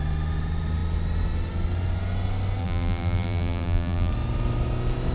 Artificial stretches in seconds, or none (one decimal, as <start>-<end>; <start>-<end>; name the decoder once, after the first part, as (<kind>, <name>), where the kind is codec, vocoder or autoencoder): 2.6-4.1 (vocoder, BigVGAN v2)